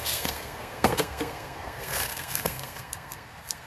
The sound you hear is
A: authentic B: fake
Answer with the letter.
B